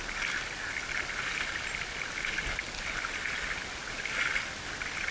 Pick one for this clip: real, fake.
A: real